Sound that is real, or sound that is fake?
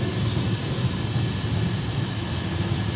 real